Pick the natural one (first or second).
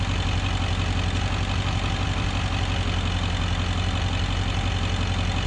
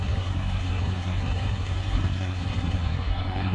first